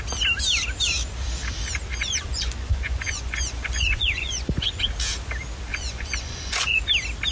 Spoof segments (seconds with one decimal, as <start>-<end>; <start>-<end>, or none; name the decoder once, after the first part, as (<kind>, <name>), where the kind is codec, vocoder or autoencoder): 1.9-4.8 (vocoder, Vocos); 5.7-6.8